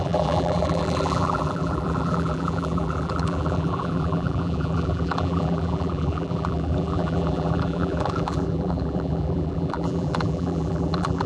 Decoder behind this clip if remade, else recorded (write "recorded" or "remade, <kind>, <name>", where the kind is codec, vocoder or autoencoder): remade, vocoder, BigVGAN v2